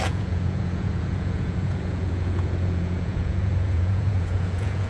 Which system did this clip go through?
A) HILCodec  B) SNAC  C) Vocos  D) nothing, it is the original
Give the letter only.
C